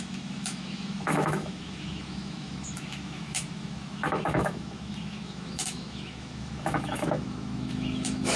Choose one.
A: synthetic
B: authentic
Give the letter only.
A